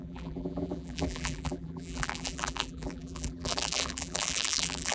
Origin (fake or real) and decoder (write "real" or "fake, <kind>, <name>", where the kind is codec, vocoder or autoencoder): fake, vocoder, BigVGAN v2